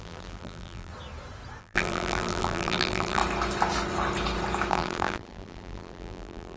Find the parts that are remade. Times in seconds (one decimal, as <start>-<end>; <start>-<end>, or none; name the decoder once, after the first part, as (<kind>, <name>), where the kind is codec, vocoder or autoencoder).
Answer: 0.0-0.9 (vocoder, BigVGAN v2); 1.6-3.2; 4.7-6.6